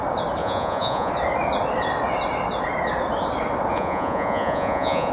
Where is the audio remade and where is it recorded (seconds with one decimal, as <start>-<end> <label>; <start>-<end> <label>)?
0.0-0.4 recorded; 0.4-1.1 remade; 1.1-3.7 recorded; 3.7-5.1 remade